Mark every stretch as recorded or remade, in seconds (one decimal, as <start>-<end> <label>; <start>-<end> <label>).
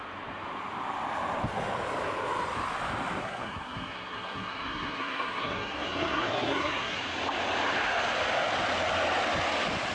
0.0-3.2 recorded; 3.2-7.0 remade; 7.0-9.9 recorded